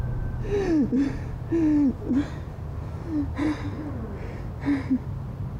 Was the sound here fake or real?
real